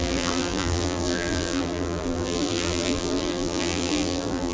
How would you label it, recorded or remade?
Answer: remade